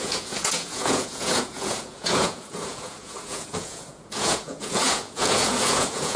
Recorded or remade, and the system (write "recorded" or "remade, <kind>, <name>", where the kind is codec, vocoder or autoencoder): remade, vocoder, Vocos